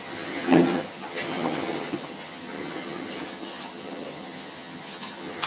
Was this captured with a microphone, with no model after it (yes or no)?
no